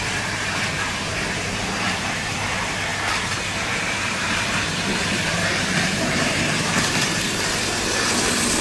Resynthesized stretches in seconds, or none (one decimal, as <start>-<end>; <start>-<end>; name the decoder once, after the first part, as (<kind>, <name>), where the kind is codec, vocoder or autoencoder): 0.0-2.9 (vocoder, BigVGAN v2); 3.8-8.6